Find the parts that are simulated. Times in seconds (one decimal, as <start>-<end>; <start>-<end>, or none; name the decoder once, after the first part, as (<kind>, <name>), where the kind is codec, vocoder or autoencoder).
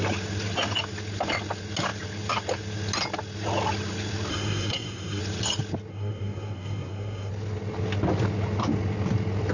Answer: 4.3-5.2 (codec, SNAC); 5.9-7.3